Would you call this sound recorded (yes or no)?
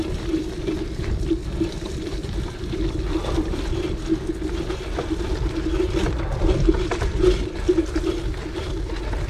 no